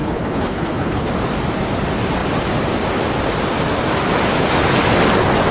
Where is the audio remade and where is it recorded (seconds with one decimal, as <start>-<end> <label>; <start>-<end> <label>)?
0.0-1.1 remade; 1.1-5.5 recorded